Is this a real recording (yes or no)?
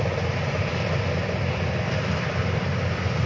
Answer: yes